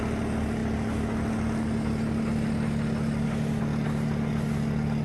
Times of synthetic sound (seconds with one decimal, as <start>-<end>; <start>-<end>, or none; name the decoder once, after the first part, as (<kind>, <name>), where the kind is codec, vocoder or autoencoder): none